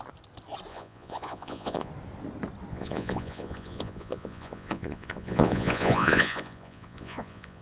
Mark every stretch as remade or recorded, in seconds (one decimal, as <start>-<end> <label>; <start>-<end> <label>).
0.0-0.7 recorded; 0.7-1.9 remade; 1.9-2.7 recorded; 2.7-7.6 remade